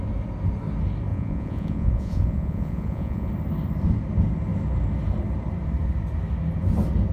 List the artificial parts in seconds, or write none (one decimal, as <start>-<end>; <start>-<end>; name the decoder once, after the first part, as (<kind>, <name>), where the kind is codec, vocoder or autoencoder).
1.1-3.3 (vocoder, Vocos)